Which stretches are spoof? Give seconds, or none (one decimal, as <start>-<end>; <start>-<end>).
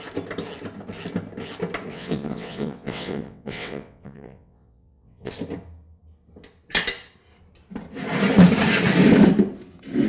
1.9-5.3